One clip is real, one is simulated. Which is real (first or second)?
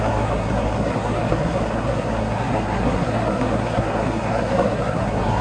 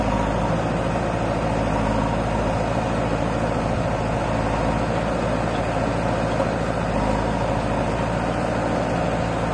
second